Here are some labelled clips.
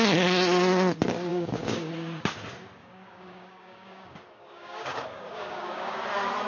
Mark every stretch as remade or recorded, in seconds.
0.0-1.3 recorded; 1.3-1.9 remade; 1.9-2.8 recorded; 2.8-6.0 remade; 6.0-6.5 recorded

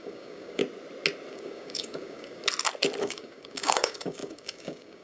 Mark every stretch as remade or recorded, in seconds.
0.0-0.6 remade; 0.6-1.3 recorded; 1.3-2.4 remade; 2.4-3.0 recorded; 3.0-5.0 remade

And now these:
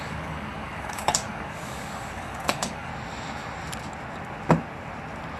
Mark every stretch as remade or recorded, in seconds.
0.0-2.9 remade; 2.9-5.4 recorded

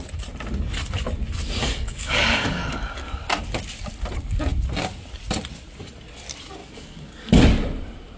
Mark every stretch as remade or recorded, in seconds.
0.0-1.6 recorded; 1.6-3.2 remade; 3.2-6.6 recorded; 6.6-7.4 remade; 7.4-8.2 recorded